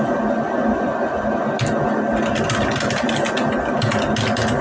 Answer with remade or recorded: recorded